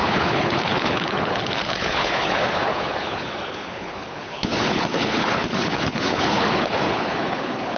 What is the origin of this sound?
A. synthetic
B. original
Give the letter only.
A